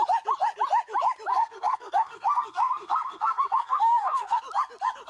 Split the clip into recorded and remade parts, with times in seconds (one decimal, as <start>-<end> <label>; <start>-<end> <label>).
0.0-1.3 recorded; 1.3-4.4 remade; 4.4-5.1 recorded